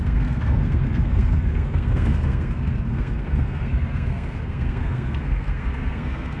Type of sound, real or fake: fake